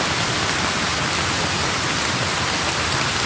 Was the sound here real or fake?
real